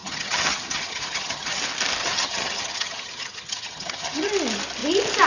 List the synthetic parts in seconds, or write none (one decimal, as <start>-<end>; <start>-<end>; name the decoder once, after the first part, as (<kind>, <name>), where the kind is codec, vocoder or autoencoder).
0.0-1.6 (vocoder, HiFi-GAN); 2.0-4.3